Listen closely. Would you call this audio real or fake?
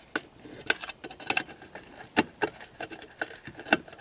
real